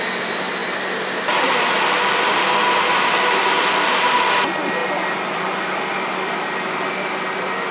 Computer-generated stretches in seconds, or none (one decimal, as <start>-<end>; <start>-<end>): none